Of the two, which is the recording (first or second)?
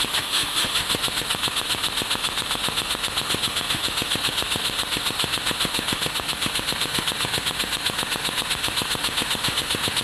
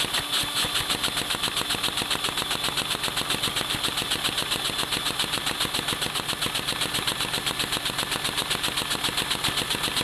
second